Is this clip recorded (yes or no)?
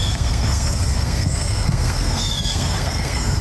no